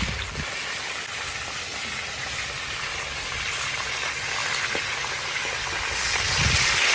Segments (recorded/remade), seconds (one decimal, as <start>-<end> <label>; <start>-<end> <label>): 0.0-6.9 recorded